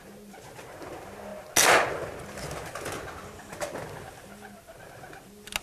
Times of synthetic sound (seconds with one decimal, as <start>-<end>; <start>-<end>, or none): none